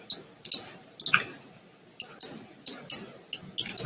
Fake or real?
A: real